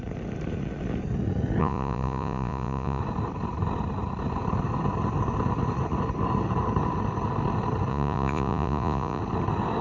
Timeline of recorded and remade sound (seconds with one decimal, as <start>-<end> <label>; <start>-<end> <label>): 0.0-1.6 recorded; 1.6-3.0 remade; 3.0-7.9 recorded; 7.9-9.2 remade; 9.2-9.8 recorded